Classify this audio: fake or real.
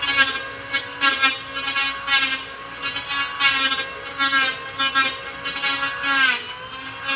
real